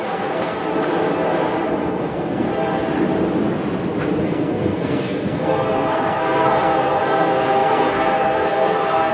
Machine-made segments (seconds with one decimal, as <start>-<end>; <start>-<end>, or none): 0.0-0.6; 1.7-2.5; 4.2-9.1